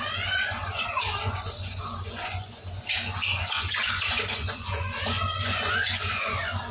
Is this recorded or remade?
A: remade